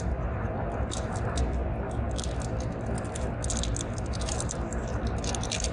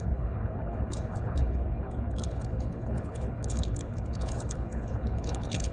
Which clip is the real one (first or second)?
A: first